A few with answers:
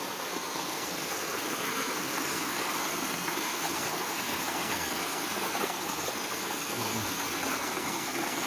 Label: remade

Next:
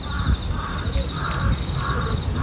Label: recorded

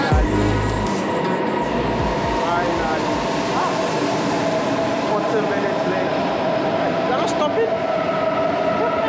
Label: recorded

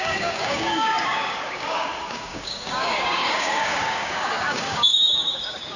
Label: remade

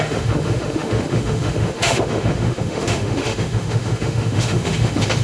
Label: remade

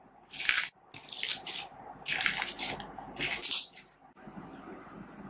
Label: recorded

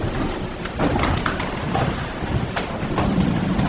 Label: recorded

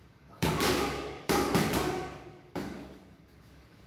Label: remade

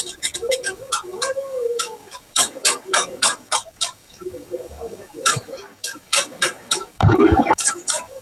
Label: remade